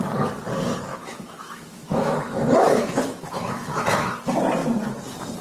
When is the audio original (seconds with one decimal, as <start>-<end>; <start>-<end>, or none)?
0.0-0.9; 4.1-5.4